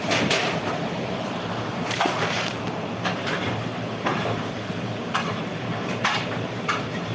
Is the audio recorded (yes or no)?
no